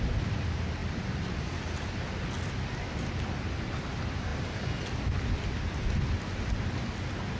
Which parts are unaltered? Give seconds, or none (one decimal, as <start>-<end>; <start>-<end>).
0.0-4.3; 5.3-7.4